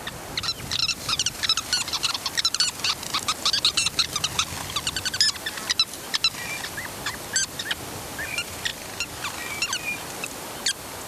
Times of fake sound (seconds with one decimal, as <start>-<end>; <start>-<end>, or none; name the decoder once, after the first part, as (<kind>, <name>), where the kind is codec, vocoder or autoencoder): 0.8-2.8 (vocoder, BigVGAN v2); 8.7-9.2